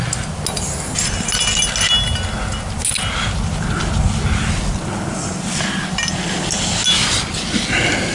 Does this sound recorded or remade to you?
recorded